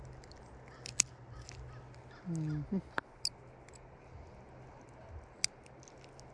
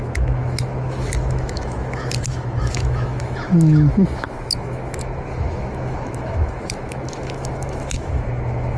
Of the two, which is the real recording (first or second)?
first